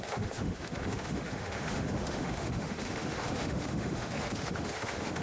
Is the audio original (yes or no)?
no